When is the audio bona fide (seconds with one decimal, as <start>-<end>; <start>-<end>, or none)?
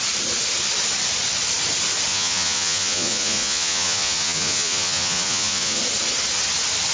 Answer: 0.0-2.1; 5.8-6.9